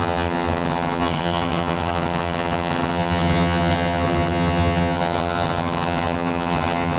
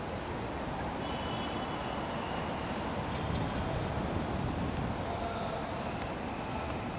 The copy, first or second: first